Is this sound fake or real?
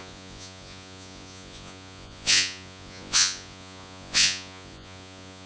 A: fake